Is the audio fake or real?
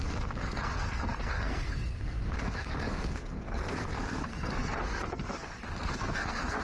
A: fake